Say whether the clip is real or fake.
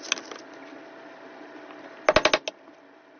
real